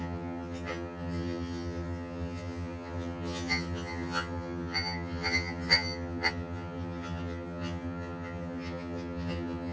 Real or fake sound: fake